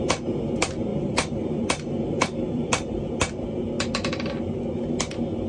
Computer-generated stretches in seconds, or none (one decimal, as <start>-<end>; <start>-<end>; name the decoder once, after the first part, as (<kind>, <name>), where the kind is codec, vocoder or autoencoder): 0.9-3.1 (vocoder, BigVGAN v2)